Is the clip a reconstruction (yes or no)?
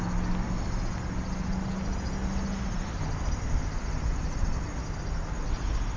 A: no